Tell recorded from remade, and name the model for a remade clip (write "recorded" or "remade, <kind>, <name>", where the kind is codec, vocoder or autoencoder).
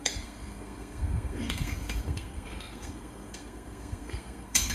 remade, codec, SNAC